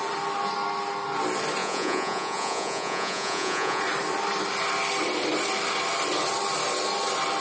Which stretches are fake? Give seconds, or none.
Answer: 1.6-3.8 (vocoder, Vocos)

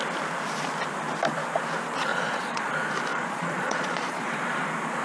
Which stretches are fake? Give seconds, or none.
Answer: 2.1-2.7 (vocoder, Vocos); 3.1-4.2